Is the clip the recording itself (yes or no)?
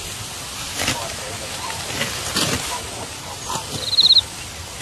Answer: yes